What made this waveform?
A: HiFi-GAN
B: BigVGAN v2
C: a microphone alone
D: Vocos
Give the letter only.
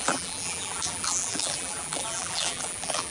B